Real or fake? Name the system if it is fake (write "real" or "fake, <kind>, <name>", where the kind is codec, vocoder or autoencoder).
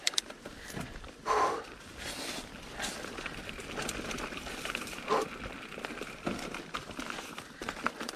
real